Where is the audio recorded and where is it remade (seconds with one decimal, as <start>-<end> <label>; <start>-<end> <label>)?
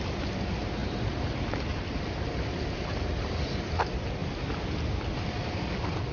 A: 0.0-6.1 recorded